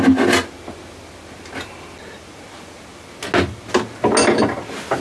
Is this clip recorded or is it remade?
recorded